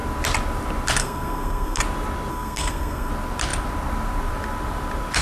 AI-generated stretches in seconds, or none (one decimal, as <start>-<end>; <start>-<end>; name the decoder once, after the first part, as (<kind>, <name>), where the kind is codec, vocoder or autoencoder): 1.0-1.8 (codec, SNAC); 2.3-3.1